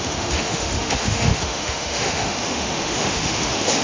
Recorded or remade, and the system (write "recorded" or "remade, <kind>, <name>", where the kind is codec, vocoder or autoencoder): remade, autoencoder, DAC-VAE